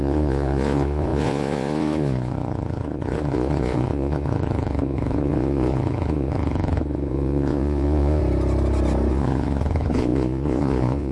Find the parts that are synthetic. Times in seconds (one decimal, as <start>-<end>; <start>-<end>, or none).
0.0-8.2; 9.1-11.1